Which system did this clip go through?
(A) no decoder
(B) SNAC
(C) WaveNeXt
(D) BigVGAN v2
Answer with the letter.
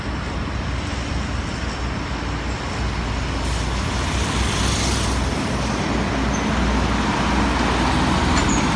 A